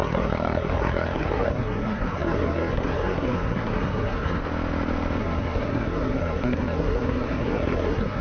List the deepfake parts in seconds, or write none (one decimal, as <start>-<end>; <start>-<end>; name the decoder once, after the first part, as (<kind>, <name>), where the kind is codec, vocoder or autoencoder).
0.0-4.4 (codec, SNAC); 5.2-8.2

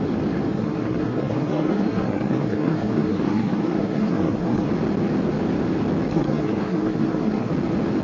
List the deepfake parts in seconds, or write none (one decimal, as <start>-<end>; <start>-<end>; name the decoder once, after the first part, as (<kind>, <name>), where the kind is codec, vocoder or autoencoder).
0.5-4.7 (codec, SNAC); 6.1-7.5

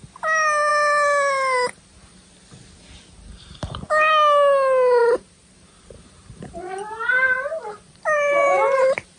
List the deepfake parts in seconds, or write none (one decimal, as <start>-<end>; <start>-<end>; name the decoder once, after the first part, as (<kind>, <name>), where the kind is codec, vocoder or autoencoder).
5.0-9.2 (vocoder, BigVGAN v2)

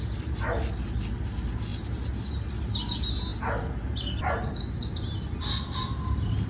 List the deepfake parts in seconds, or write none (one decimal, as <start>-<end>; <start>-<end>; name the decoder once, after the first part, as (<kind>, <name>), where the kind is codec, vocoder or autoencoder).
none

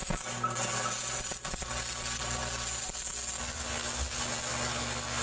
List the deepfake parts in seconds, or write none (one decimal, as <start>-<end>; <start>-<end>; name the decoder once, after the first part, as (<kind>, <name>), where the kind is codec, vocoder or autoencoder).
none

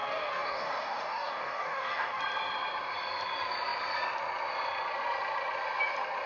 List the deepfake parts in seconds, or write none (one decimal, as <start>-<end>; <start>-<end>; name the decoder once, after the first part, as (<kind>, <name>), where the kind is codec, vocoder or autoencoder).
0.0-2.2 (codec, DAC)

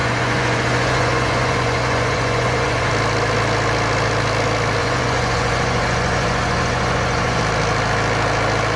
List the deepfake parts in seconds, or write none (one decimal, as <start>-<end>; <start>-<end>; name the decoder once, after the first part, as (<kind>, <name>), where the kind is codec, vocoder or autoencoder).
0.0-2.9 (vocoder, Vocos); 4.8-7.4